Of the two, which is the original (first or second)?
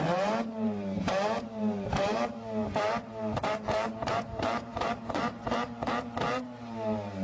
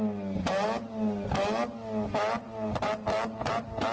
second